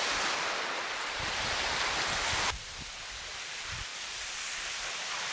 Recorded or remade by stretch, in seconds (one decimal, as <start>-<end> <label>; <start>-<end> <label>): 0.0-1.7 remade; 1.7-3.3 recorded; 3.3-3.9 remade; 3.9-4.8 recorded; 4.8-5.3 remade